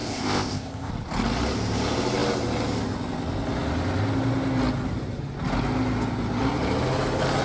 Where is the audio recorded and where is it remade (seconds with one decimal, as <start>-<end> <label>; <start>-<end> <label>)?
0.0-0.9 remade; 0.9-7.4 recorded